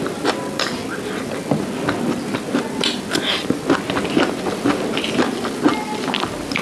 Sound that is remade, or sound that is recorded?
recorded